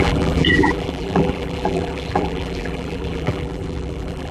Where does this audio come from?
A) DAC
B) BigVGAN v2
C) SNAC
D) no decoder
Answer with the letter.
B